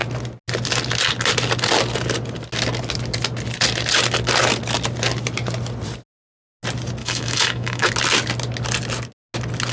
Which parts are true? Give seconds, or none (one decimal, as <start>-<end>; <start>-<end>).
0.0-7.0; 7.9-9.7

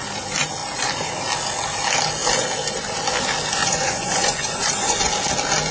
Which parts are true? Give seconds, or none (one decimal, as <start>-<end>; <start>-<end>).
0.0-3.6; 5.1-5.7

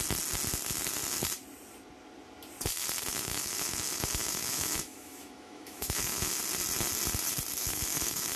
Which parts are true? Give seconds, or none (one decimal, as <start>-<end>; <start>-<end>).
0.0-3.1; 6.4-7.6